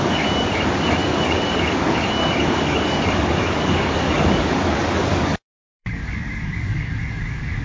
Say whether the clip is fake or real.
fake